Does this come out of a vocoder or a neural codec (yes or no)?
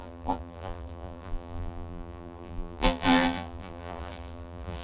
yes